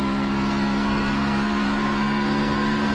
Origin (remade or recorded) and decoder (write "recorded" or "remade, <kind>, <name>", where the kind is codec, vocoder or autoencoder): remade, codec, SNAC